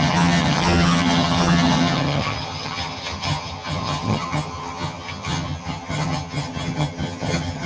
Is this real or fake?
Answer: fake